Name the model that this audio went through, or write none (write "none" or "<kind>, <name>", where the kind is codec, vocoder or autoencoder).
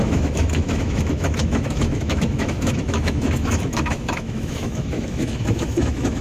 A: autoencoder, DAC-VAE